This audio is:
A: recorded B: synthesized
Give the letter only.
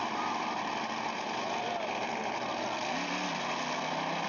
A